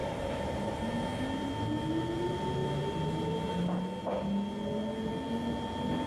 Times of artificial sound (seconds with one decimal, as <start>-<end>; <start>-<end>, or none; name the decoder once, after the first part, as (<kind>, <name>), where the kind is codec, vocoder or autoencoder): 0.0-0.8 (vocoder, BigVGAN v2)